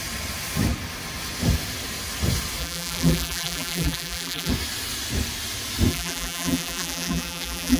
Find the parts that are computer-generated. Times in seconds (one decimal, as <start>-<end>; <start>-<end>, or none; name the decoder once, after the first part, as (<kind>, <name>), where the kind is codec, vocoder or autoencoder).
2.6-4.5 (vocoder, BigVGAN v2); 5.9-7.8